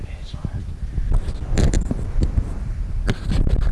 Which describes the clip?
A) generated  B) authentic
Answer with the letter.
B